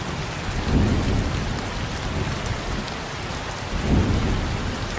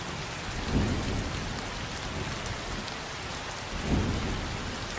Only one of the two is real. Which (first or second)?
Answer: second